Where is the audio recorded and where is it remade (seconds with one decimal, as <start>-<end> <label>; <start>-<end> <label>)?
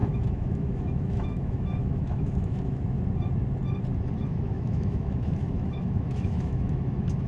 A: 0.0-2.8 remade; 2.8-4.3 recorded; 4.3-7.3 remade